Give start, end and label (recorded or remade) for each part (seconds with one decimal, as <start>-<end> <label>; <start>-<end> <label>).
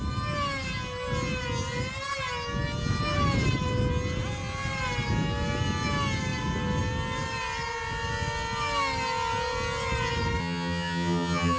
0.0-10.4 recorded; 10.4-11.6 remade